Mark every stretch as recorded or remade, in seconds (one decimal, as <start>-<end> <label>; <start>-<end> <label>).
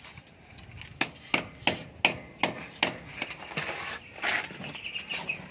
0.0-5.5 recorded